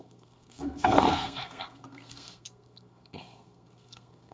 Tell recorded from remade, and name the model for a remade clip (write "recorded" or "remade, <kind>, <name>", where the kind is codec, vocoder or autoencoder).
remade, codec, SNAC